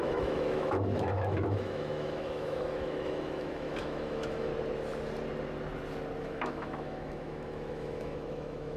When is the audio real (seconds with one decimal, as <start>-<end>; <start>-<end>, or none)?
4.5-6.2